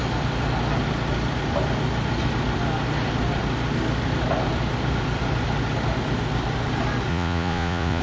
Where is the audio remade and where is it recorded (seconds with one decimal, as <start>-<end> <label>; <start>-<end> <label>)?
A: 0.0-7.1 recorded; 7.1-8.0 remade